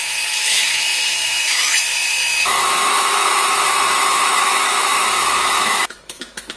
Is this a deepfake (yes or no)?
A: yes